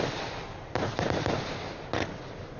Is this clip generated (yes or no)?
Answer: no